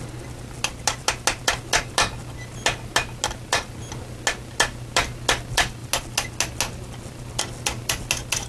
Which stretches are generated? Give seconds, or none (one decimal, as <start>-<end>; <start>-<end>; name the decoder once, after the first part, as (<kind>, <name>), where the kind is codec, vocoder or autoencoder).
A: none